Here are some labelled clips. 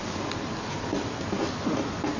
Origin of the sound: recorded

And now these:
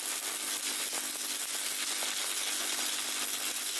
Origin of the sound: recorded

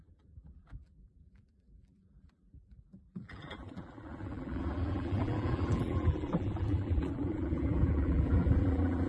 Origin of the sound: remade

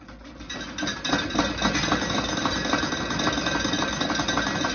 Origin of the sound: recorded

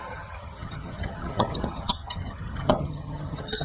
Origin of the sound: remade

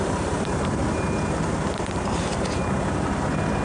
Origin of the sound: recorded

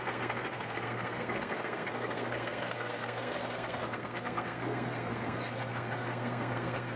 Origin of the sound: remade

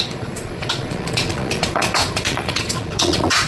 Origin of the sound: remade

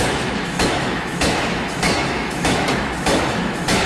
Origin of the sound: remade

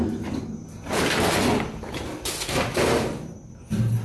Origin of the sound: recorded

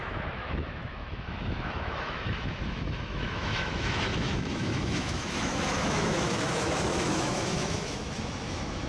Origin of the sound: remade